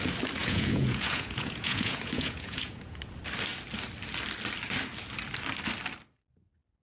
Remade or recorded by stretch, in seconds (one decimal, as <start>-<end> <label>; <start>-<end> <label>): 0.0-0.4 recorded; 0.4-3.0 remade; 3.0-6.8 recorded